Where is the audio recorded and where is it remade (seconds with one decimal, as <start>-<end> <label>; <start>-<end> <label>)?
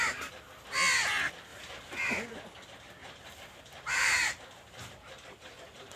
0.0-1.5 recorded; 1.5-2.0 remade; 2.0-3.0 recorded; 3.0-6.0 remade